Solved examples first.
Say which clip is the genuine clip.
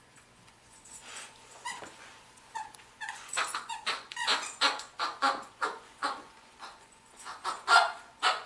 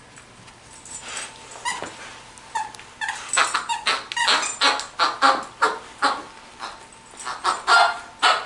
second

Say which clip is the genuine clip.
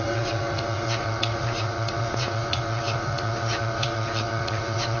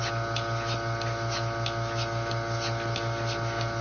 second